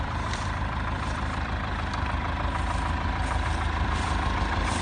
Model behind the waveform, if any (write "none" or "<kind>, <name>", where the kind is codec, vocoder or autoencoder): vocoder, BigVGAN v2